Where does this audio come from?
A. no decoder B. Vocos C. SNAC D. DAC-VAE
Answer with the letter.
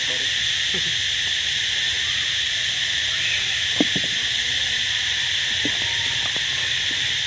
A